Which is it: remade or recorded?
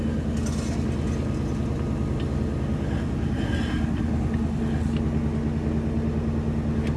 recorded